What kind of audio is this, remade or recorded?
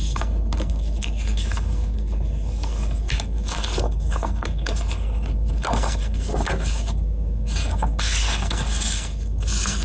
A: remade